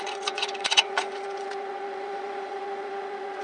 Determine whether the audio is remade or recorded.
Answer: remade